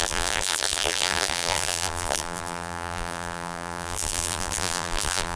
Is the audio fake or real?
fake